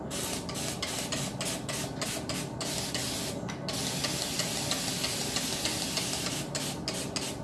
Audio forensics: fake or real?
real